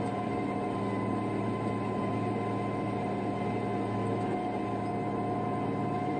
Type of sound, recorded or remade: recorded